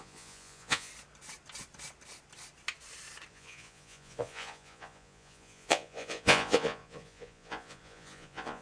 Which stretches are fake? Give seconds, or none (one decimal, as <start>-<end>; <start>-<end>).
0.0-0.9; 3.3-8.6